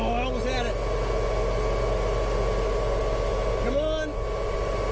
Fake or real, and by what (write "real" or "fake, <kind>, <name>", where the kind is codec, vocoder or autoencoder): real